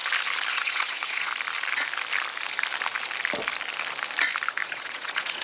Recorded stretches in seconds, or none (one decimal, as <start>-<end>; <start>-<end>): 0.0-0.5; 1.3-4.5